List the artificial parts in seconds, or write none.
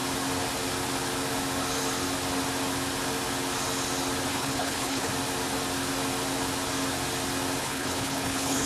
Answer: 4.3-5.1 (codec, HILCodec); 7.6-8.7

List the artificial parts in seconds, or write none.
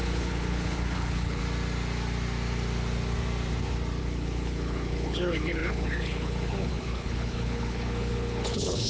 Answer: 0.0-1.4 (codec, HILCodec); 4.0-8.9